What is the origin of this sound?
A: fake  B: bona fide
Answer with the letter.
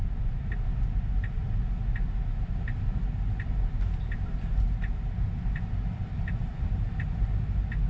B